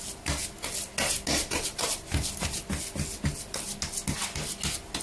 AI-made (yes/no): no